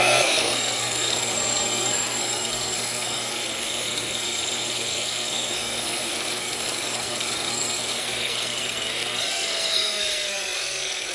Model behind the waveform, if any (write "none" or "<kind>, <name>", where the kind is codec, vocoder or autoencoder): codec, SNAC